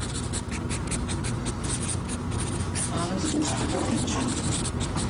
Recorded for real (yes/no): yes